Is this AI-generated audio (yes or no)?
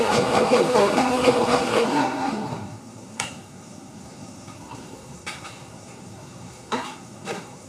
yes